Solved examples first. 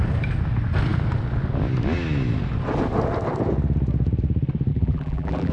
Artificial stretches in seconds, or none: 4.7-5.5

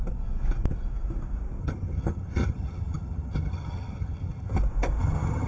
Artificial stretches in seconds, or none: 1.6-4.6; 5.0-5.5

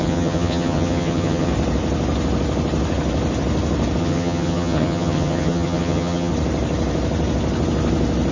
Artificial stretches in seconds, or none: 0.0-1.5; 4.0-6.3

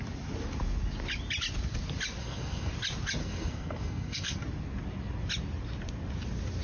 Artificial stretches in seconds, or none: 2.2-2.7; 3.2-4.4

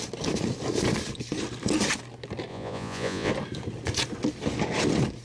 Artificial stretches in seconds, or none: 2.5-3.3

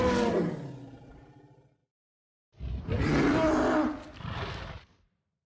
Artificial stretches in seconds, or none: none